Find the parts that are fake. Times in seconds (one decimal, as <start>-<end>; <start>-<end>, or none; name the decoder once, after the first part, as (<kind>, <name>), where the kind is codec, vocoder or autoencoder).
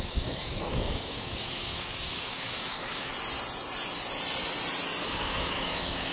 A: 0.0-3.1 (codec, DAC); 5.0-6.1